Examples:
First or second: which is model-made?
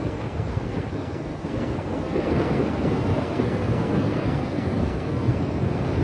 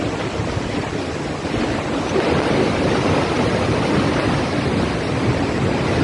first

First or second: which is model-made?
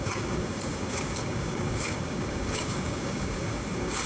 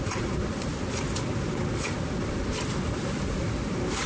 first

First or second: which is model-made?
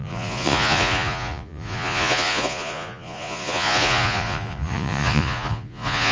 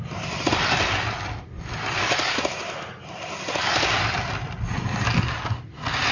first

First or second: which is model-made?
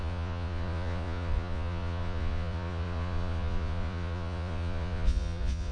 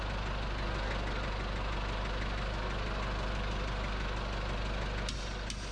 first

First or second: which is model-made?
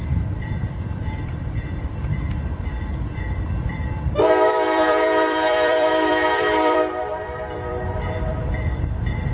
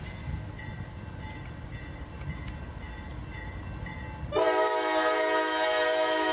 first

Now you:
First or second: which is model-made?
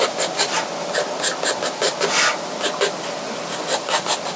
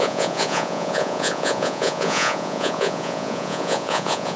second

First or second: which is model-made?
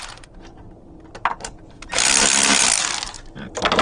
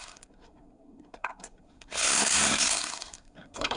second